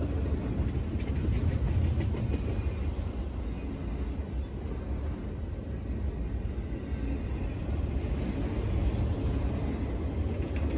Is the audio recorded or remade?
recorded